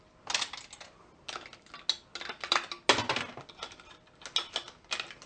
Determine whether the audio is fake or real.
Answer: real